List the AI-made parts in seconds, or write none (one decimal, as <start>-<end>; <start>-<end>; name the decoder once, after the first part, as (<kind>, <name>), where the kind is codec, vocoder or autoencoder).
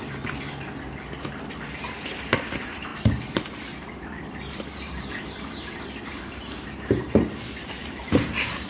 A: 7.8-8.7 (vocoder, BigVGAN v2)